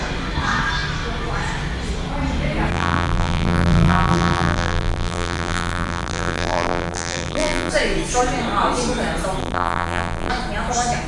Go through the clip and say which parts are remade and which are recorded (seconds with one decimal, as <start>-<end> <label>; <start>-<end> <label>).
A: 0.0-2.7 recorded; 2.7-7.7 remade; 7.7-9.4 recorded; 9.4-10.3 remade; 10.3-11.1 recorded